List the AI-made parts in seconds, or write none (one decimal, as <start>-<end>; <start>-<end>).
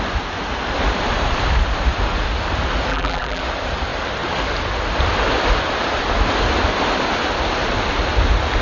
2.9-3.4